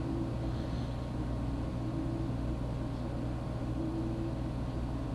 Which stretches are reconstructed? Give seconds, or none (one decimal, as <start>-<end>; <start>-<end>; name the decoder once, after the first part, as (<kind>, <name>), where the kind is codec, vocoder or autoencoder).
0.0-1.7 (vocoder, BigVGAN v2)